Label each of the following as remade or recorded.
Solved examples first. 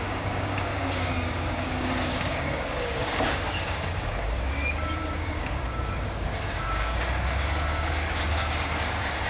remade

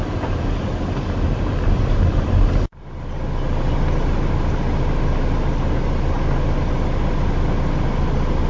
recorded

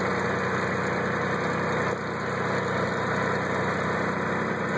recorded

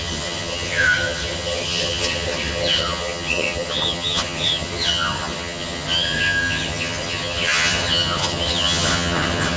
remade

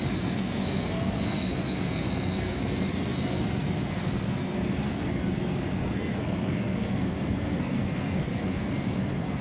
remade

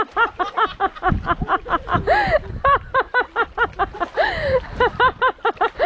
recorded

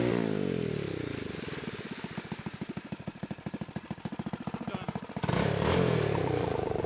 recorded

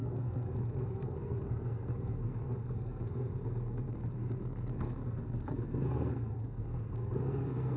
remade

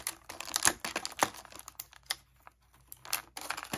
recorded